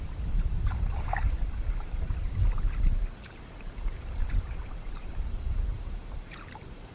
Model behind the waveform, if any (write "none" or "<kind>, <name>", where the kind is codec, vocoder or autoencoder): vocoder, BigVGAN v2